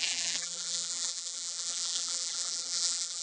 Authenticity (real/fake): fake